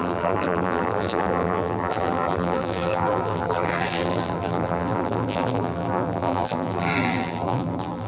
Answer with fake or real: fake